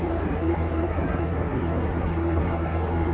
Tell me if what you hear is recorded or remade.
remade